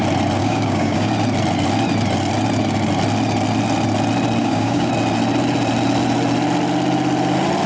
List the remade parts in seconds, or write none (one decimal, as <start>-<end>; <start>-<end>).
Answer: 0.4-1.1; 4.4-4.9